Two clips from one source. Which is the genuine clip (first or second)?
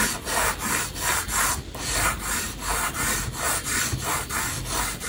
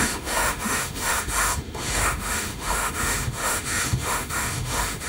first